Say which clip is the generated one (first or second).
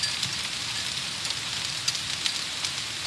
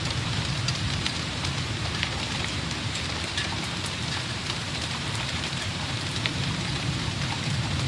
second